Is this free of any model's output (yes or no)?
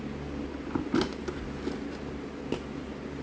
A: yes